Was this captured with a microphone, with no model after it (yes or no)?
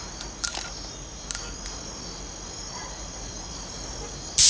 yes